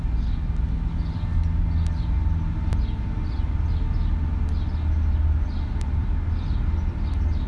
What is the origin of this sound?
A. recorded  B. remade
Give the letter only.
A